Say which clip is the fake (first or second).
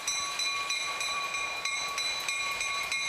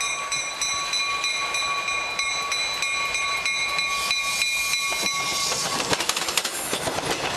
first